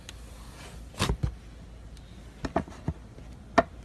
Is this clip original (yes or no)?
yes